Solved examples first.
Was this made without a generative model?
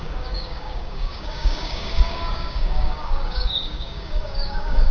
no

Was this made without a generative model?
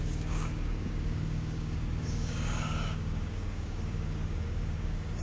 no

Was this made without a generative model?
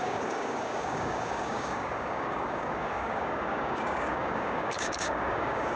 no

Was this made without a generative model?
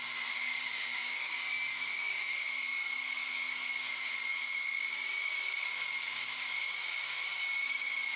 no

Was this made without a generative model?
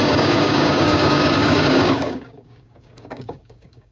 no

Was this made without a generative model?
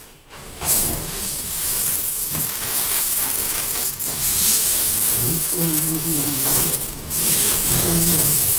no